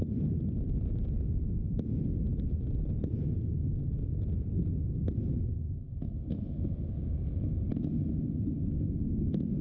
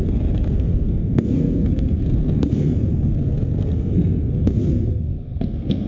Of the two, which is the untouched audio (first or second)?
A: first